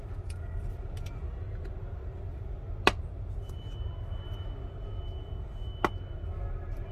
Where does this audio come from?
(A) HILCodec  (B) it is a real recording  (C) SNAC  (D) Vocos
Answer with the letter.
B